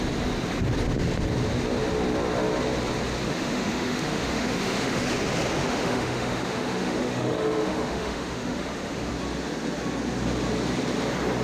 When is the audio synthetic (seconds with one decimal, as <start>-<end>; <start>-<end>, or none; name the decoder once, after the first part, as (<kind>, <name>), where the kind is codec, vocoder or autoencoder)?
3.3-5.0 (autoencoder, DAC-VAE); 5.6-9.1